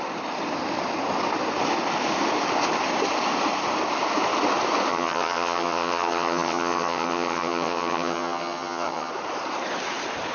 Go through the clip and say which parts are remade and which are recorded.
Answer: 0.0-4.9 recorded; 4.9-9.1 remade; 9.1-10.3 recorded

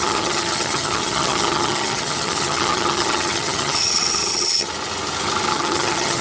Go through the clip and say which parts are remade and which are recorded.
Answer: 0.0-4.7 remade; 4.7-5.5 recorded; 5.5-6.2 remade

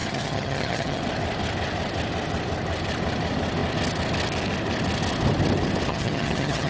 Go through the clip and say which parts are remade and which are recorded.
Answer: 0.0-1.0 remade; 1.0-5.9 recorded; 5.9-6.7 remade

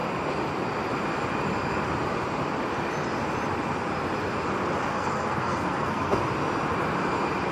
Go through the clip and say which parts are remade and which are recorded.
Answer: 0.0-4.9 recorded; 4.9-6.2 remade; 6.2-7.5 recorded

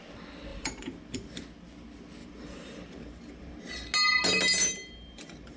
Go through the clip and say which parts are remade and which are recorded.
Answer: 0.0-0.5 recorded; 0.5-1.4 remade; 1.4-2.2 recorded; 2.2-3.7 remade; 3.7-4.6 recorded; 4.6-5.6 remade